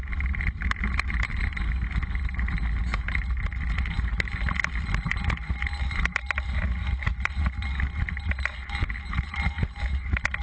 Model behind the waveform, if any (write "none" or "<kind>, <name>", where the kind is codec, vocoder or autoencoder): none